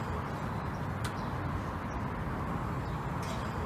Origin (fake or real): real